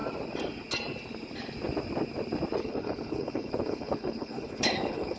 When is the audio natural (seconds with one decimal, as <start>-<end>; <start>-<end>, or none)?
0.0-2.6